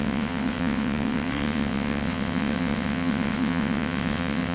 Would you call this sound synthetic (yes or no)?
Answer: yes